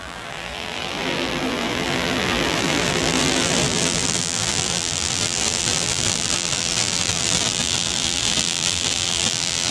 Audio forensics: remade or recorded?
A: remade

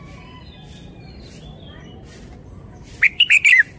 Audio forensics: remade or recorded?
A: remade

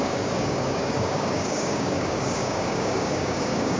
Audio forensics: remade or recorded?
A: remade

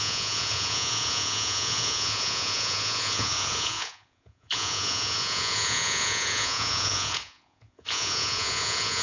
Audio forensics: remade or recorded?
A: remade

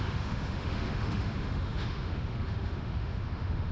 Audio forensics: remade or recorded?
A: remade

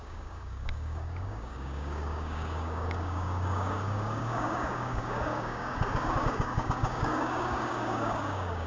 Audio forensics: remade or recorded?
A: remade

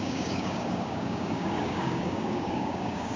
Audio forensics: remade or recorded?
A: remade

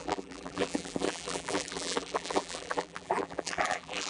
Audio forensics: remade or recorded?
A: remade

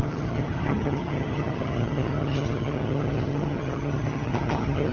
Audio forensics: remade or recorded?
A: remade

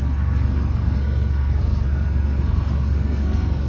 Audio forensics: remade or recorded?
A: remade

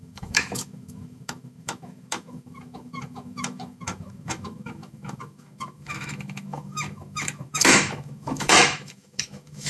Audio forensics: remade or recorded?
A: remade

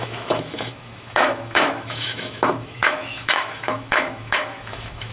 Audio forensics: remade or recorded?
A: remade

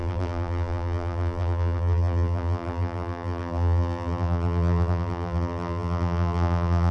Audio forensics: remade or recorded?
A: remade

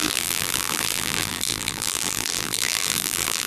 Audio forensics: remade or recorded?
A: remade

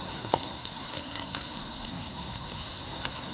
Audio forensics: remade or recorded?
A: remade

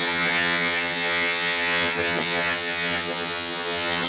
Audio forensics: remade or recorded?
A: remade